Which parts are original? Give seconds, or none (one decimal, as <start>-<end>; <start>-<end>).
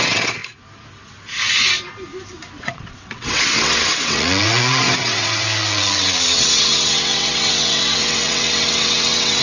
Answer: 0.4-2.6